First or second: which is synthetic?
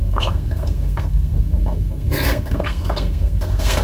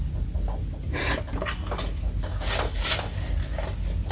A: first